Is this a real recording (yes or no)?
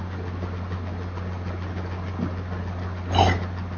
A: yes